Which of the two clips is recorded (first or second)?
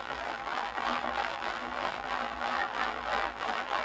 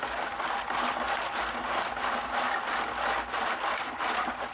second